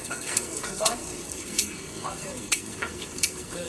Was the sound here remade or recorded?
remade